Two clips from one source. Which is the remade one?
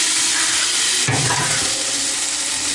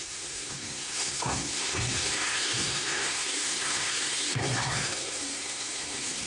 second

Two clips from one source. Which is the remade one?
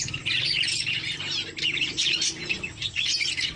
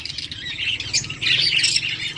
first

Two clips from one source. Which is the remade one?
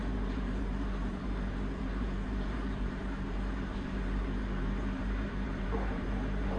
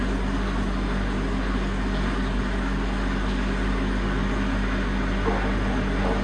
first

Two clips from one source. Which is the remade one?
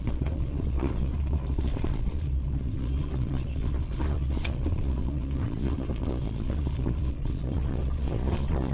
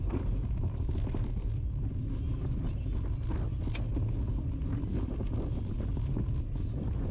first